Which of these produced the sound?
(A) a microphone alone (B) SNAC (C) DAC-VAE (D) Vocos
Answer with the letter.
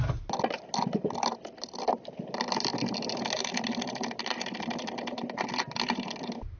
A